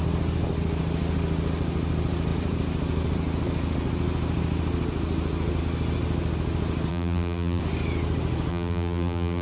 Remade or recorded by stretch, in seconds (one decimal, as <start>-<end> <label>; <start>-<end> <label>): 0.0-6.9 recorded; 6.9-7.6 remade; 7.6-8.5 recorded; 8.5-9.4 remade

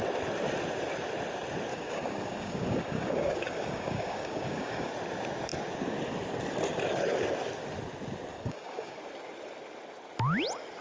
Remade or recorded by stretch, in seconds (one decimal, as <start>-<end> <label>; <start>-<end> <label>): 0.0-1.7 recorded; 1.7-4.9 remade; 4.9-8.3 recorded; 8.3-9.0 remade; 9.0-10.8 recorded

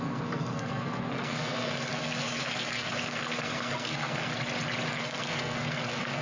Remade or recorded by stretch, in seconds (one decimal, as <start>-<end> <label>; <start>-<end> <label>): 0.0-4.3 remade; 4.3-4.9 recorded; 4.9-6.2 remade